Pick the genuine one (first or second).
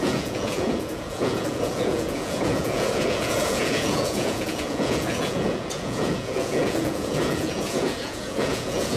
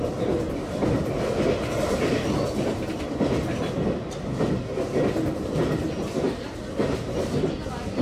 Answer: second